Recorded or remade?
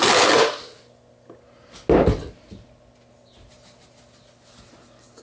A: recorded